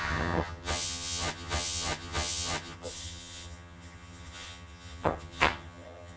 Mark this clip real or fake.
fake